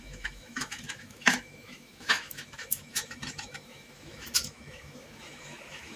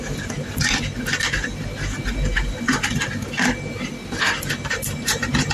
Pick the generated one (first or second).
first